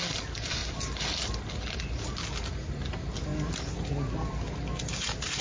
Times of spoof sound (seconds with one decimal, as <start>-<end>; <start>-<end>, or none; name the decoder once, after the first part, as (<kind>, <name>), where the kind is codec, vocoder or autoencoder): none